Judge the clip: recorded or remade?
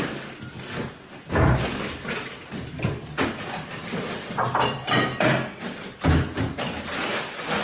recorded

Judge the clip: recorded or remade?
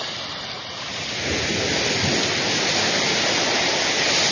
recorded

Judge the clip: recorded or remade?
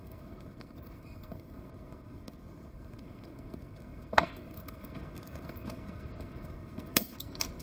remade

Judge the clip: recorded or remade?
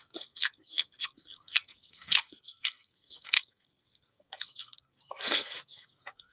remade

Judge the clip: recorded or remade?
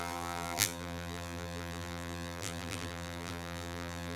remade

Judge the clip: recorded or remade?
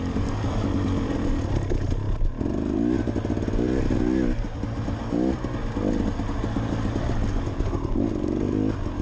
recorded